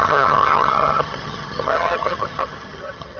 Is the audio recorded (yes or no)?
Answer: no